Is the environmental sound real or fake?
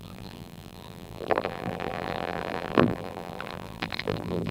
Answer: fake